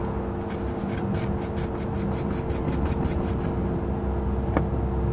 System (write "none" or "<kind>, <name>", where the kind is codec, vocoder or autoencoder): none